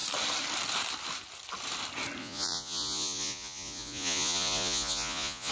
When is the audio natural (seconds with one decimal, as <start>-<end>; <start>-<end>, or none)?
0.0-2.2